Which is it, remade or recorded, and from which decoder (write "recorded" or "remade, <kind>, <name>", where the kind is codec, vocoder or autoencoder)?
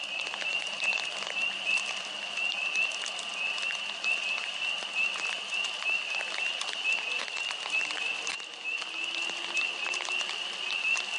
recorded